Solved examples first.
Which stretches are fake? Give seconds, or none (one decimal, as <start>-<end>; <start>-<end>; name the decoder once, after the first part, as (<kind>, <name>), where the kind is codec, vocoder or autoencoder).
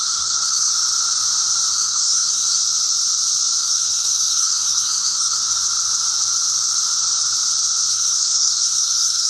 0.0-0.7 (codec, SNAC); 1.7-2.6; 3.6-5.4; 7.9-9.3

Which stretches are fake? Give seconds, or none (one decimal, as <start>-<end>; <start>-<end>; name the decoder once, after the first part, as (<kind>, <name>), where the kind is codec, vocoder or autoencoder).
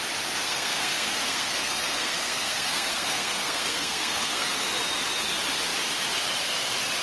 0.4-4.6 (codec, SNAC)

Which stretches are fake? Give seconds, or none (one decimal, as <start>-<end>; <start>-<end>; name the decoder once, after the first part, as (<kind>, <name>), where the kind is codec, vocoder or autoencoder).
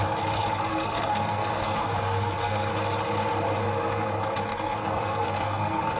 0.7-2.7 (codec, SNAC); 3.6-4.1; 4.5-6.0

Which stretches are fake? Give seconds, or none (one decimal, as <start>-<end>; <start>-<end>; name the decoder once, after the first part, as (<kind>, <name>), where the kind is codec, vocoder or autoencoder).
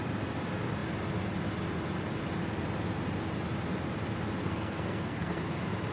4.4-5.4 (codec, SNAC)